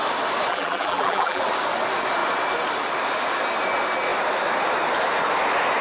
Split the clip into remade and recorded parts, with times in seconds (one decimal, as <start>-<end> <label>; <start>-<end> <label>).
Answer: 0.0-0.5 recorded; 0.5-1.4 remade; 1.4-5.8 recorded